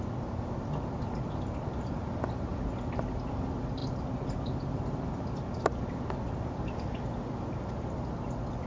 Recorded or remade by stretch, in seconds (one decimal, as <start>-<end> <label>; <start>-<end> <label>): 0.0-8.7 recorded